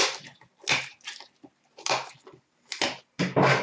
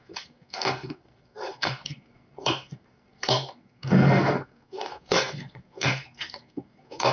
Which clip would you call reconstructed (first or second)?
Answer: second